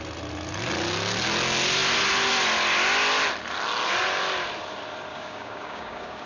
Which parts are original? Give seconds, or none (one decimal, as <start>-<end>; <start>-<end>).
0.0-5.1